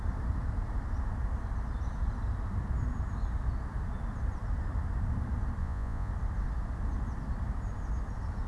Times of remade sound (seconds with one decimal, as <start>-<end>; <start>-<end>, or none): 5.6-6.1